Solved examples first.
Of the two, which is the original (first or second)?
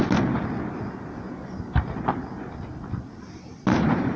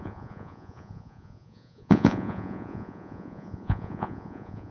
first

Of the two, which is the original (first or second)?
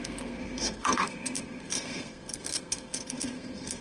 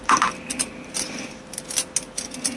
second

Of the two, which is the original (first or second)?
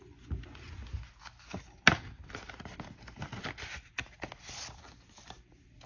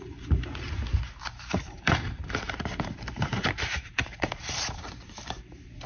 first